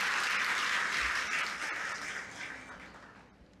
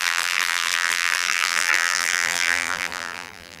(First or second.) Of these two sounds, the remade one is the second